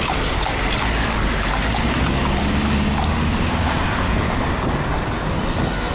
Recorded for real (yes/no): yes